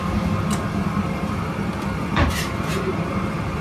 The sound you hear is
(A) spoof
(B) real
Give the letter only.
A